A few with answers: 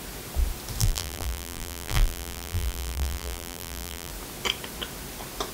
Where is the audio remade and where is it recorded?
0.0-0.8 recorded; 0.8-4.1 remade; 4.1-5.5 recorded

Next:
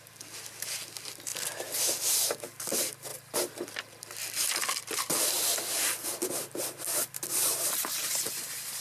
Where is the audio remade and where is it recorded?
0.0-3.1 recorded; 3.1-5.3 remade; 5.3-8.8 recorded

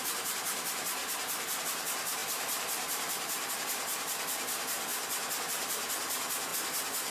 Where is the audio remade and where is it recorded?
0.0-1.0 remade; 1.0-1.6 recorded; 1.6-4.9 remade; 4.9-5.4 recorded; 5.4-7.1 remade

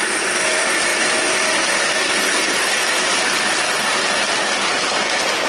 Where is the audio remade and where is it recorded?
0.0-5.5 recorded

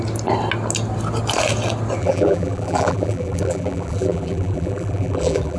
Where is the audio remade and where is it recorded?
0.0-2.0 recorded; 2.0-5.6 remade

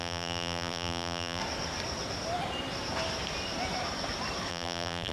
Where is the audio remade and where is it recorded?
0.0-1.4 remade; 1.4-4.5 recorded; 4.5-5.1 remade

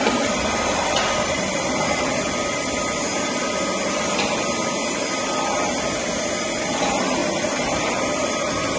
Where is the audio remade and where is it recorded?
0.0-3.0 remade; 3.0-6.4 recorded; 6.4-8.8 remade